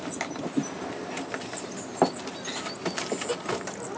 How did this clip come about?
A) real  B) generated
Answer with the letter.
A